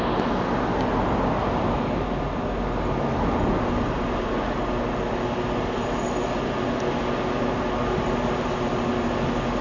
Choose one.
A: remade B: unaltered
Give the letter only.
B